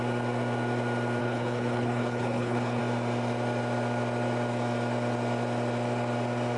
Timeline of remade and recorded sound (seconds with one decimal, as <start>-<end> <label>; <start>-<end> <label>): 0.0-1.2 recorded; 1.2-2.8 remade; 2.8-6.6 recorded